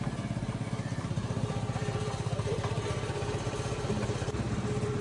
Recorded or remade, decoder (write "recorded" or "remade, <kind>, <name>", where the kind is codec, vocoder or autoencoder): remade, vocoder, BigVGAN v2